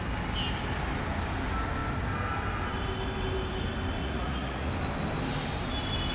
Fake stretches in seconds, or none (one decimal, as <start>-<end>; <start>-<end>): 4.0-4.7

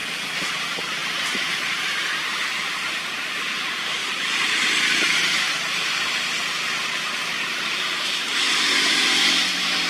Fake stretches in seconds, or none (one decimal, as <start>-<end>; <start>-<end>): 0.5-1.0; 2.1-4.0; 8.5-9.9

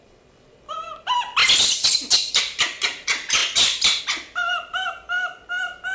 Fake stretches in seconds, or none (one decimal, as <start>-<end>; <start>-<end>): 0.0-1.4; 2.1-3.4; 4.0-5.9

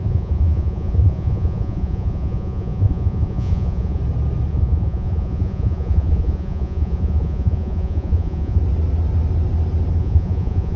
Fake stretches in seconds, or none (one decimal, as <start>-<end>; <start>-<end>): 0.0-4.0; 4.5-8.6; 10.0-10.8

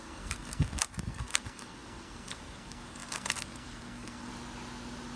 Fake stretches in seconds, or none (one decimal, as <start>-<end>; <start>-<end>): 0.0-4.3

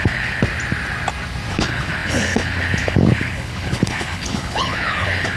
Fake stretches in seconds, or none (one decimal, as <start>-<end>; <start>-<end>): 0.0-0.4; 1.5-5.4